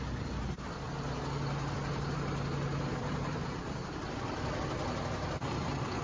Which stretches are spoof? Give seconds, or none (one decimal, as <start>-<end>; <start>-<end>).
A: 2.9-4.6